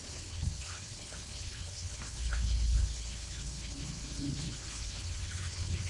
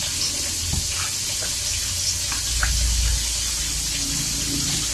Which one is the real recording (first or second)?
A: second